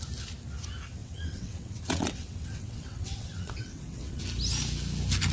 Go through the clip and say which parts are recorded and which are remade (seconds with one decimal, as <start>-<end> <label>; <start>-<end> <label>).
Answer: 0.0-1.0 recorded; 1.0-4.2 remade; 4.2-5.3 recorded